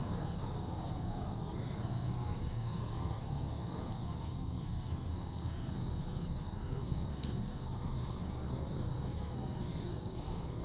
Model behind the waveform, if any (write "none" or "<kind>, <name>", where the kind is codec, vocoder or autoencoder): codec, SNAC